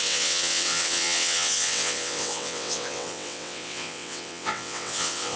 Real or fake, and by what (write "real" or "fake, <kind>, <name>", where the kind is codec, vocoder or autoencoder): fake, vocoder, WaveNeXt